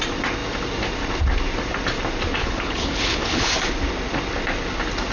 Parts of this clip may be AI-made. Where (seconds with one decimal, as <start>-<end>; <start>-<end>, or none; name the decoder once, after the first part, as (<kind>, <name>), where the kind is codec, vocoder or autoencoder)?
2.4-3.5 (codec, HILCodec)